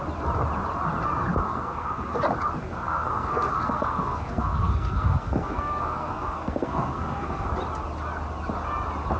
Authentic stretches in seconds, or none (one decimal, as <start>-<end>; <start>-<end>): 0.0-1.4; 2.2-2.6; 7.5-9.2